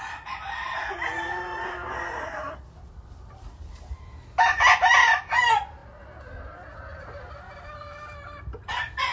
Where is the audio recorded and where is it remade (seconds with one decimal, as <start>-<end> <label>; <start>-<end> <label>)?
0.0-9.1 recorded